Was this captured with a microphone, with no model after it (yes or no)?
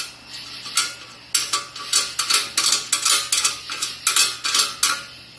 yes